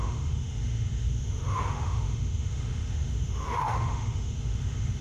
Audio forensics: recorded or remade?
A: remade